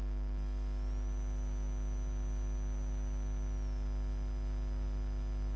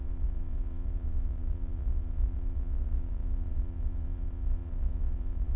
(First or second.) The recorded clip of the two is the first